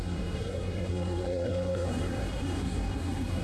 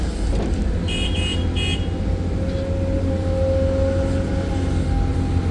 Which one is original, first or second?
second